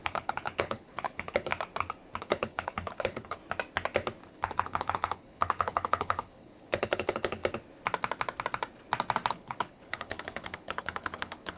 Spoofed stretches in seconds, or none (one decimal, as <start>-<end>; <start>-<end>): 0.0-1.5; 2.2-3.4; 4.3-7.4; 9.3-11.6